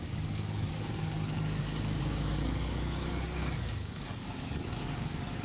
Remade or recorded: remade